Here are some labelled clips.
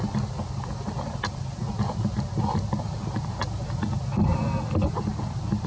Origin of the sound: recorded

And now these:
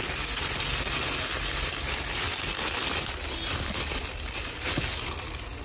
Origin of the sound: recorded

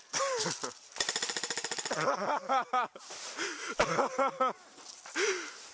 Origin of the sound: recorded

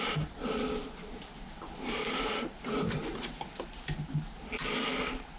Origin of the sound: recorded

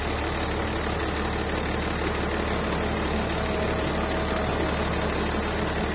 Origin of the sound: recorded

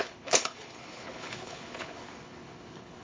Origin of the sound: remade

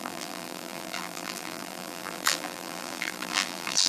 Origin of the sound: remade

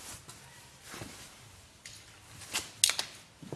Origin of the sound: recorded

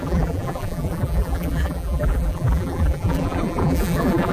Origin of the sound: remade